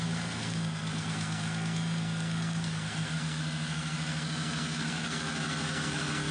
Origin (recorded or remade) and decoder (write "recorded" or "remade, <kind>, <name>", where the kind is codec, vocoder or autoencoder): remade, codec, SNAC